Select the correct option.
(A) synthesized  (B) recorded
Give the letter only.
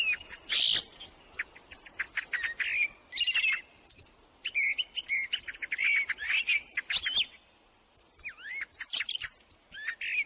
B